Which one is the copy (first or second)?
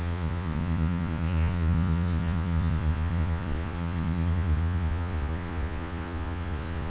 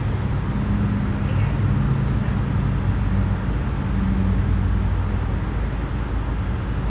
first